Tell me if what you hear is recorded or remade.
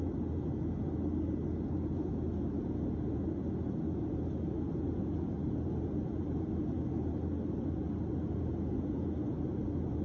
recorded